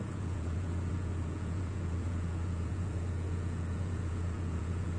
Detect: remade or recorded remade